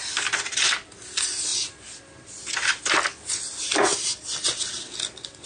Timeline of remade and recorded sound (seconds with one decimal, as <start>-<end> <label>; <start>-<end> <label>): 0.0-5.5 recorded